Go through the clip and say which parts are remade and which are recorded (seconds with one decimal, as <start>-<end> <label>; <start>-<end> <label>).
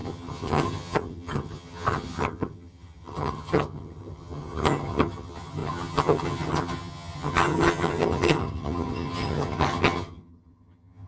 0.0-11.1 remade